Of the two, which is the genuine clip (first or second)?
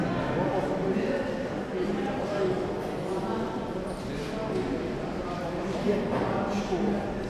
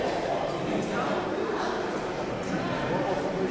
first